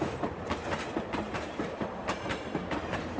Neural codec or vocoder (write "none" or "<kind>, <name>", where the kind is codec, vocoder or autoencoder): vocoder, BigVGAN v2